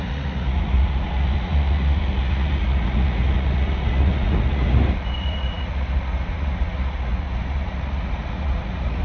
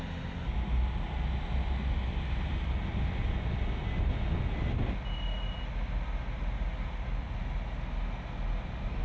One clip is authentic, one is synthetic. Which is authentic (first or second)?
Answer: second